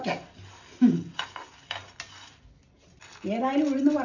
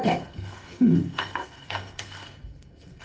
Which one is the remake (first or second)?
second